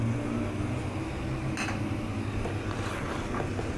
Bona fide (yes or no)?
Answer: yes